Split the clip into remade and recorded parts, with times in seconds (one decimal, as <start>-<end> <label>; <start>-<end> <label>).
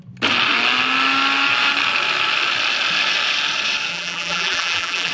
0.0-3.9 recorded; 3.9-5.1 remade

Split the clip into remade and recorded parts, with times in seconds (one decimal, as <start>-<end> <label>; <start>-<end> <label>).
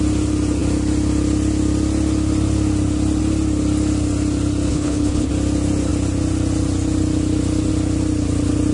0.0-4.7 recorded; 4.7-5.3 remade; 5.3-8.7 recorded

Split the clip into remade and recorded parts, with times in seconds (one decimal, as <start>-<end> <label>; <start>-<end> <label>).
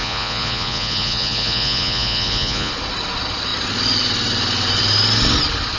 0.0-2.7 remade; 2.7-5.8 recorded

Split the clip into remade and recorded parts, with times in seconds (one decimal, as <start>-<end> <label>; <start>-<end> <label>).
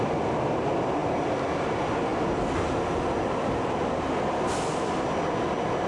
0.0-5.9 recorded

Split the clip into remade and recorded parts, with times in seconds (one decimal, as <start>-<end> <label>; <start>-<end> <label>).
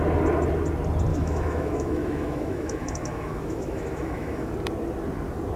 0.0-1.1 recorded; 1.1-4.5 remade; 4.5-5.6 recorded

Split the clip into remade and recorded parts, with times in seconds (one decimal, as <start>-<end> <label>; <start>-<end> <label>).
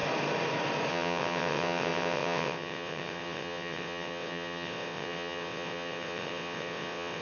0.0-0.9 recorded; 0.9-7.2 remade